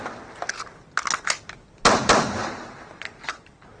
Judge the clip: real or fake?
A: real